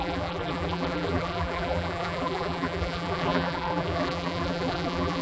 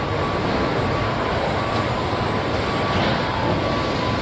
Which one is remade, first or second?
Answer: first